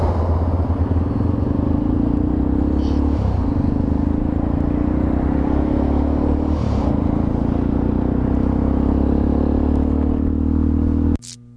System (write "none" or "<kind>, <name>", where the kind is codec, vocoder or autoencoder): none